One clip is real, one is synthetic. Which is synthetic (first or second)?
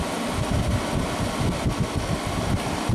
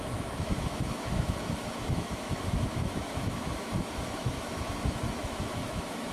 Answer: second